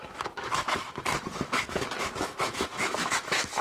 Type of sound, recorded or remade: remade